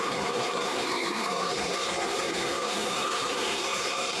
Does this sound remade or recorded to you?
remade